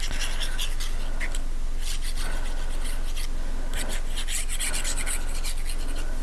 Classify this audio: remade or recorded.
recorded